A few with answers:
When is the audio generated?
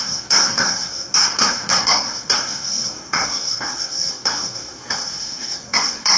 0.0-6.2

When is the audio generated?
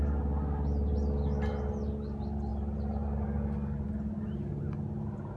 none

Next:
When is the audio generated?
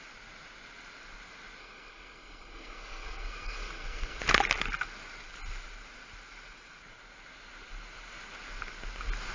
1.6-4.2